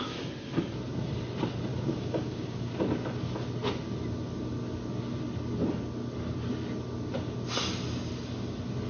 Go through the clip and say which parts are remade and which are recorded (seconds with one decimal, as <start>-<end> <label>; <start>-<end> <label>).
0.0-1.7 recorded; 1.7-2.7 remade; 2.7-8.9 recorded